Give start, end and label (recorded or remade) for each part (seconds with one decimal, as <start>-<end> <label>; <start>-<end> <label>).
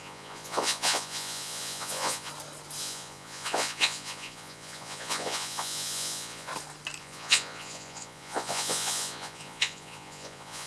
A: 0.0-2.3 remade; 2.3-2.8 recorded; 2.8-6.5 remade; 6.5-7.0 recorded; 7.0-10.7 remade